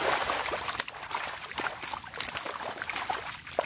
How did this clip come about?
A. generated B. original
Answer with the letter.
A